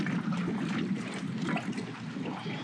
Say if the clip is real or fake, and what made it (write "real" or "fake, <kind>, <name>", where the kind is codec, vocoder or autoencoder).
real